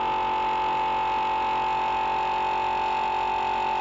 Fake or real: real